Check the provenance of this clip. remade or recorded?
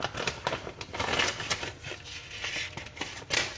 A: recorded